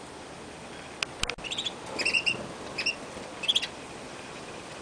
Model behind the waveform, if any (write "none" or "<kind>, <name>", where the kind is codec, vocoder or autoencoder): none